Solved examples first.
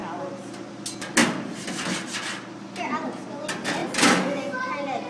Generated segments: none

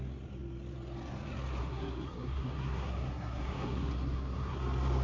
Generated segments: 1.6-4.6 (codec, SNAC)

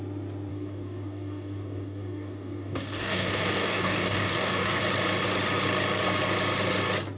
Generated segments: 0.5-4.8 (codec, DAC)

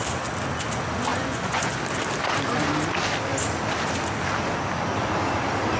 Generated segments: 1.1-1.8 (vocoder, Vocos)

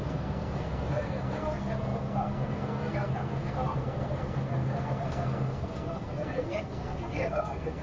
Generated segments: 0.0-7.8 (codec, SNAC)

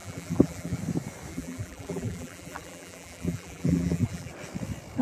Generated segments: 0.0-0.8 (vocoder, BigVGAN v2); 1.3-4.3

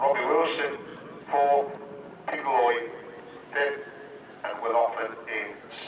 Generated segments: none